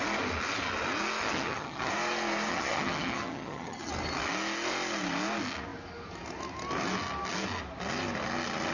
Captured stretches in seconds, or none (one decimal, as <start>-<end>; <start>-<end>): 0.0-1.2; 1.9-2.5; 3.9-8.7